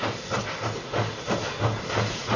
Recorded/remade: recorded